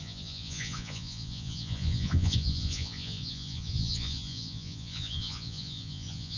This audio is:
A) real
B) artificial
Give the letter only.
B